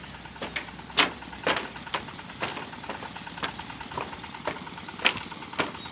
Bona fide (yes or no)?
yes